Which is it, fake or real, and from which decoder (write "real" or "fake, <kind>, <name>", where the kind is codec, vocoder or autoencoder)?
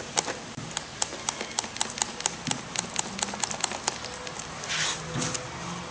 real